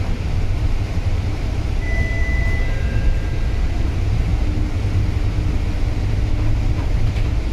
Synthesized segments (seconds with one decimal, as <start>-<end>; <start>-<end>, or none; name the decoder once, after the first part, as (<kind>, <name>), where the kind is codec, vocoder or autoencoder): 0.0-4.3 (vocoder, BigVGAN v2); 6.6-7.5